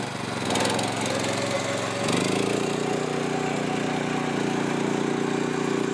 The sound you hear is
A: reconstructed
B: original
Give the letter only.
B